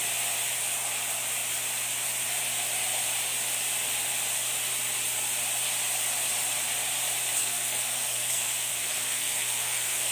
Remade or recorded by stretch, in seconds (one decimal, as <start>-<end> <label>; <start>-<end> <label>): 0.0-7.4 recorded; 7.4-10.1 remade

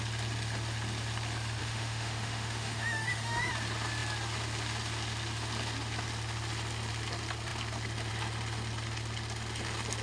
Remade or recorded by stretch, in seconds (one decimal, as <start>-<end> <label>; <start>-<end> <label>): 0.0-1.6 recorded; 1.6-3.5 remade; 3.5-10.0 recorded